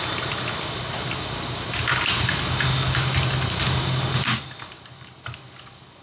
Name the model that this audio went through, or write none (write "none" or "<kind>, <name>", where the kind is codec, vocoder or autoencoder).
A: none